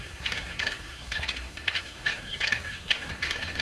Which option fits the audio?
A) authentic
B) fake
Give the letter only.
B